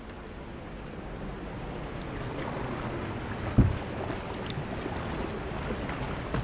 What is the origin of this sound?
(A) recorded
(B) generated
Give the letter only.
A